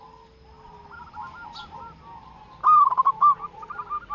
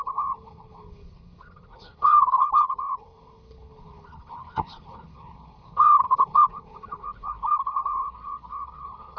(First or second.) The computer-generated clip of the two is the second